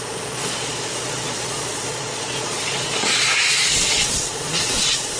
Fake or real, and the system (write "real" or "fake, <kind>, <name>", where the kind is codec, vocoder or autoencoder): fake, vocoder, Vocos